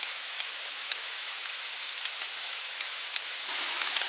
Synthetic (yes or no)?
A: yes